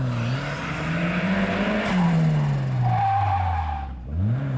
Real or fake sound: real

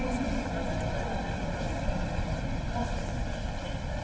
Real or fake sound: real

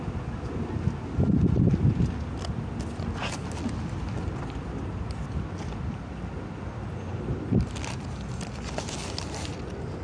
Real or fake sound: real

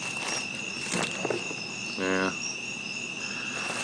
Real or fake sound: real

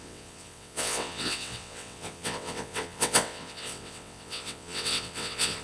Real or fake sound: fake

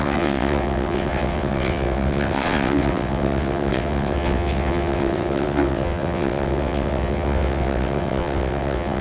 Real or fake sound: fake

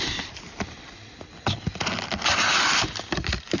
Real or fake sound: real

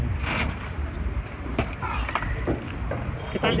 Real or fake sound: real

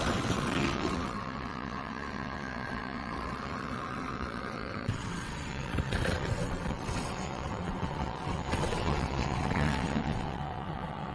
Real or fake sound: fake